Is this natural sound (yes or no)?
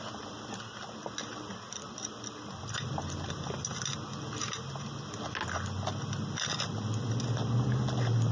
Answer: yes